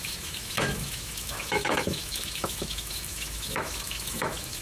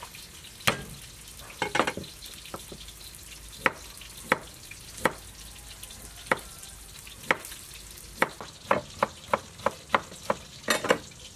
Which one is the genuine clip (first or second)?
second